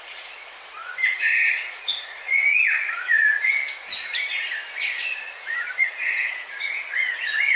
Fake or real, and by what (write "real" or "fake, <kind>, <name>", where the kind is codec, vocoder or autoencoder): fake, vocoder, Vocos